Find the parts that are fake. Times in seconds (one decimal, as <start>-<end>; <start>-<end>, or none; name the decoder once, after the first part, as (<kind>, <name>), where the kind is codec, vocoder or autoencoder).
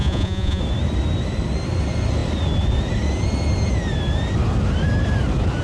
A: 0.0-0.6 (vocoder, Vocos)